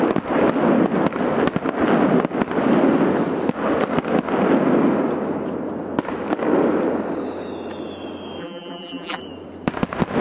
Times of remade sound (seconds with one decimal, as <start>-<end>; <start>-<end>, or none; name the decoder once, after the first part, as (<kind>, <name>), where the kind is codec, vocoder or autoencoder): 8.4-9.2 (vocoder, BigVGAN v2)